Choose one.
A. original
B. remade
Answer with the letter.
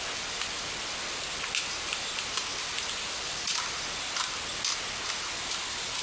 A